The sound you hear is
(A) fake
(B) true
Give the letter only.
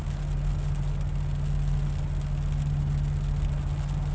B